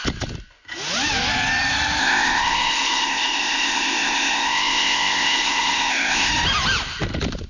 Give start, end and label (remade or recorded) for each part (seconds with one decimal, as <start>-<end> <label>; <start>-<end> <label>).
0.0-2.0 recorded; 2.0-6.3 remade; 6.3-7.5 recorded